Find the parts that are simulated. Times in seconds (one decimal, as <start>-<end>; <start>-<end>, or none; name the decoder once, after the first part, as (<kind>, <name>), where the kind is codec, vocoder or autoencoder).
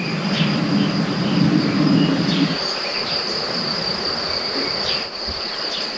2.9-4.1 (vocoder, BigVGAN v2)